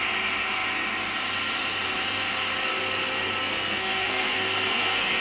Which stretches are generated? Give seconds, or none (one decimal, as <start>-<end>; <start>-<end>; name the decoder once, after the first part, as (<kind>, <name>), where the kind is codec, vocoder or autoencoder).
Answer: 3.4-5.2 (codec, SNAC)